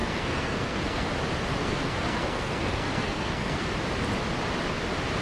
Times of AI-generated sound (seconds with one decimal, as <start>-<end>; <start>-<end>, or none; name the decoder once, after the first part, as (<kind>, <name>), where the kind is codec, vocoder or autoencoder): 0.0-1.1 (codec, SNAC); 1.6-3.7